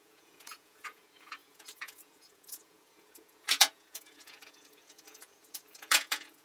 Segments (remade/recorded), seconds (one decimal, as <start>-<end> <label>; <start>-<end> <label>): 0.0-6.4 remade